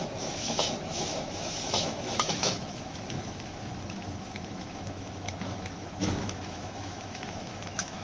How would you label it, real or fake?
fake